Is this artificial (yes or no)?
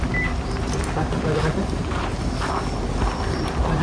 no